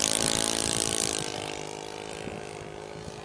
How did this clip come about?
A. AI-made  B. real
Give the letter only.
B